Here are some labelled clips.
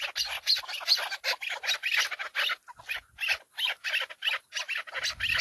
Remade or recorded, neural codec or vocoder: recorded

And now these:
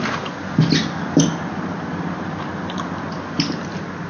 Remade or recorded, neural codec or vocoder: recorded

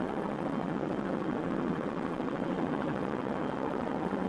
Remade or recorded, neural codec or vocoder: remade, vocoder, WaveNeXt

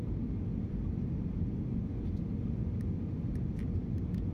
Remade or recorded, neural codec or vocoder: recorded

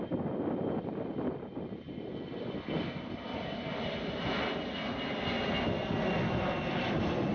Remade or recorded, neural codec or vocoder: recorded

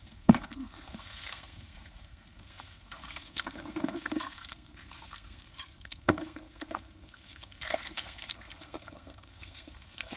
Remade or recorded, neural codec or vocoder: remade, codec, SNAC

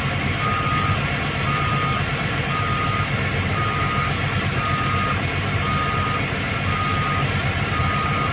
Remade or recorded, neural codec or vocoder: recorded